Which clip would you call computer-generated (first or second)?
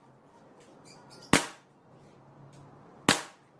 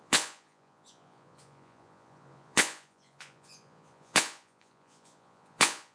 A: second